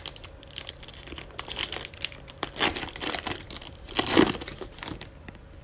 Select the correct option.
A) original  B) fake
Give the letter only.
B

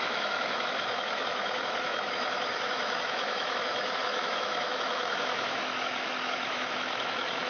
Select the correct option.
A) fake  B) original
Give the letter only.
A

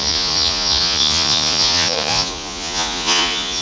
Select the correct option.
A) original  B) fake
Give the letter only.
B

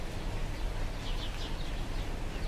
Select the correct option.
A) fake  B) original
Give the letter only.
B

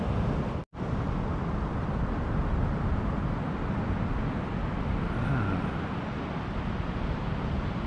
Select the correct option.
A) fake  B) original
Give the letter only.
B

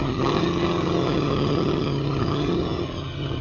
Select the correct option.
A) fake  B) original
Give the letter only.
A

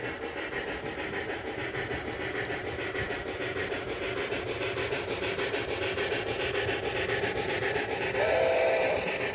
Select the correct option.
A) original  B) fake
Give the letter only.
B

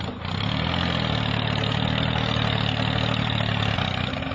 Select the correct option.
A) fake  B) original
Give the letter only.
B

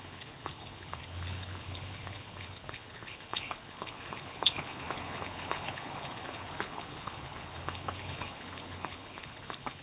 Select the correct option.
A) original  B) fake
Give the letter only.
B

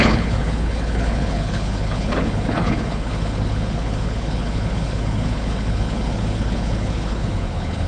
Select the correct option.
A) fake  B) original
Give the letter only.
A